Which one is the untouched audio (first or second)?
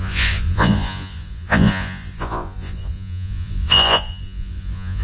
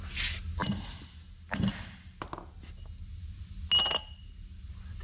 second